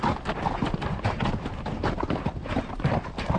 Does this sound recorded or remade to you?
recorded